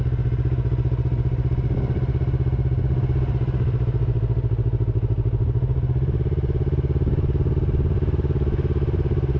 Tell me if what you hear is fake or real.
real